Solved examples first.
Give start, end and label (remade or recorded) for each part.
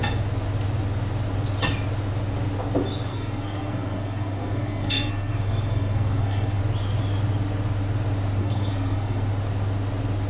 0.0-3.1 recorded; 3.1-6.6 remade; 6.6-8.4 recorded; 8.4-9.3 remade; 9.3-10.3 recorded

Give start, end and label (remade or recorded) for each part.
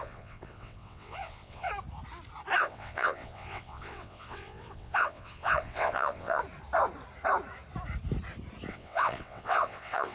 0.0-1.7 remade; 1.7-2.6 recorded; 2.6-6.4 remade; 6.4-8.7 recorded; 8.7-10.1 remade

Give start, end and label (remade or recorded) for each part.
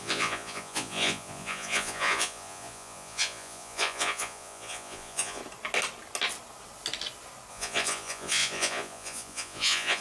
0.0-5.4 remade; 5.4-7.5 recorded; 7.5-10.0 remade